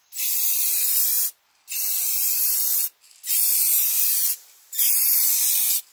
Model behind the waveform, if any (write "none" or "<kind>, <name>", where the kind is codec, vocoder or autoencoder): none